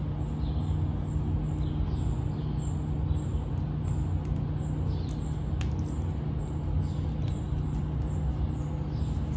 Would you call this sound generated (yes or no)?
no